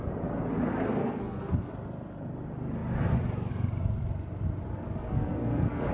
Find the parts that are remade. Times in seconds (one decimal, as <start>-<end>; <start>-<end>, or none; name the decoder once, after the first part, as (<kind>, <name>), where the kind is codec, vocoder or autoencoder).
1.0-1.7 (codec, SNAC); 4.7-5.9